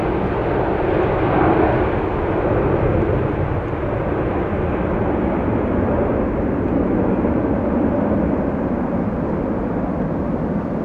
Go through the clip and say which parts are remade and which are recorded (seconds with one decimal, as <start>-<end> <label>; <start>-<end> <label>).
0.0-10.8 recorded